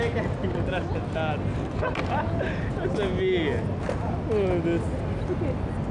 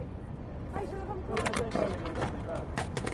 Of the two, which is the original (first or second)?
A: first